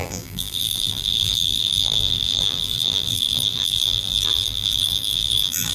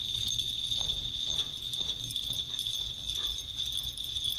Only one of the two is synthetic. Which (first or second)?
first